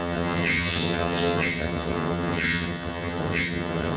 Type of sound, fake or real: fake